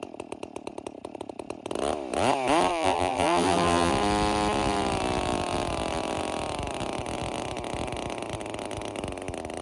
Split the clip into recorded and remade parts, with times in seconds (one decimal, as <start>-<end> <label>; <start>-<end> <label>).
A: 0.0-2.7 recorded; 2.7-3.9 remade; 3.9-9.6 recorded